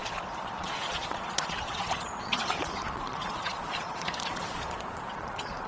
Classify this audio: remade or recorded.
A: remade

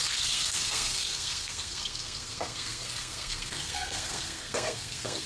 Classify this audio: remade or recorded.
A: remade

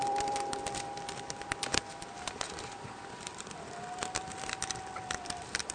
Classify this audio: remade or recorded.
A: remade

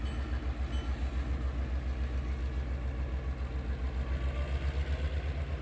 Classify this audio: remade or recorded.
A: recorded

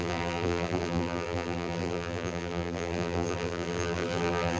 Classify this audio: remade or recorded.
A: remade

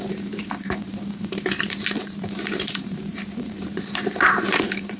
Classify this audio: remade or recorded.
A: remade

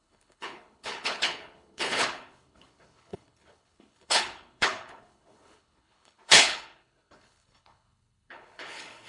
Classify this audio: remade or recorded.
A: remade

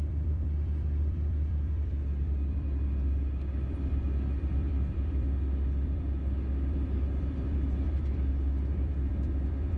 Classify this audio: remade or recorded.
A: remade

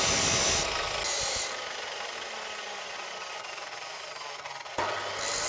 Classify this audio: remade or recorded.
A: recorded